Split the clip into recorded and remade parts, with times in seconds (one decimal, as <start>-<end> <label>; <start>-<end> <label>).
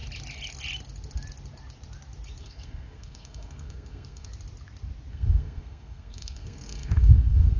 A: 0.0-2.4 recorded; 2.4-4.3 remade; 4.3-5.1 recorded; 5.1-7.6 remade